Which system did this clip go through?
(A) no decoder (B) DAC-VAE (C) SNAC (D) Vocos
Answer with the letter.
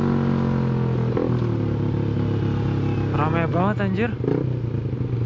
A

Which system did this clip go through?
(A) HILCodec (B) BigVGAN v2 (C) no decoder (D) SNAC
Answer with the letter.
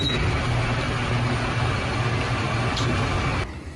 C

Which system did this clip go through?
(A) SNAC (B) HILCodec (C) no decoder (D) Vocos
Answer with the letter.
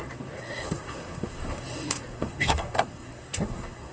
A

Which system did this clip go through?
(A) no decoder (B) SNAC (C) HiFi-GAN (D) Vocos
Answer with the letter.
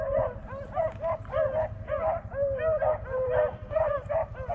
A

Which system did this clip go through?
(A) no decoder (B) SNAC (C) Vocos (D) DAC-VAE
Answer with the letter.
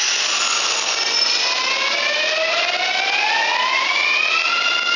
A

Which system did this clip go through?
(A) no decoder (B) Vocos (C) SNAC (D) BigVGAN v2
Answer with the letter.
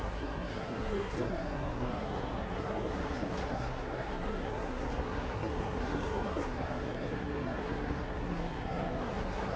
C